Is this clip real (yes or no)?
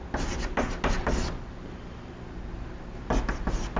yes